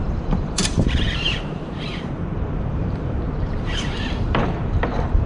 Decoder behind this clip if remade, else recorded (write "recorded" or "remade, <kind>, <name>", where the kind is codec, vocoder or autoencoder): remade, vocoder, BigVGAN v2